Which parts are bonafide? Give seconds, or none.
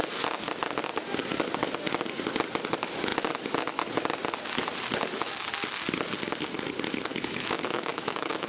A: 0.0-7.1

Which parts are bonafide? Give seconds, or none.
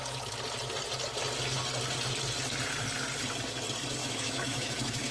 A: 0.0-4.0